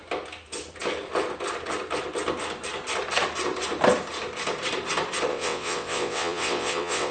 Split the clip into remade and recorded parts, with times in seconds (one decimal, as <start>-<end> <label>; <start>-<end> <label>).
0.0-5.3 recorded; 5.3-7.1 remade